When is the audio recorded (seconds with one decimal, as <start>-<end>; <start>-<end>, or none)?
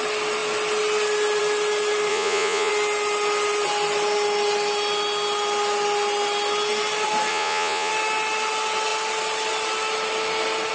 0.0-2.1; 2.7-7.3; 7.9-10.7